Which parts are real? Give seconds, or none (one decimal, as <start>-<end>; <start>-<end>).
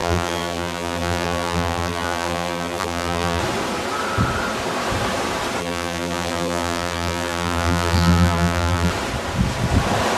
3.4-5.6; 8.9-10.2